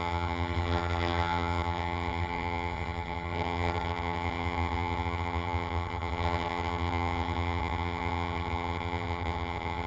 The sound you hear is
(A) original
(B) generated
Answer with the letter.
B